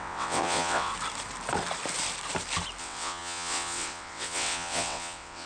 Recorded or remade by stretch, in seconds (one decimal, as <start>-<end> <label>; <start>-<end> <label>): 0.0-0.9 remade; 0.9-2.8 recorded; 2.8-5.5 remade